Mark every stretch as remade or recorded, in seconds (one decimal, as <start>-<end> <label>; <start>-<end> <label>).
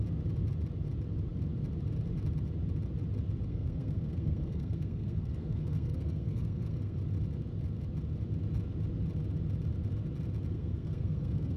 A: 0.0-3.5 recorded; 3.5-7.0 remade; 7.0-10.5 recorded; 10.5-11.6 remade